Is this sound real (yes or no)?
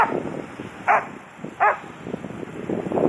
yes